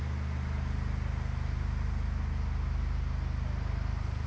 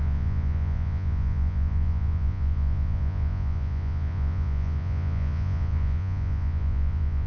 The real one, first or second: first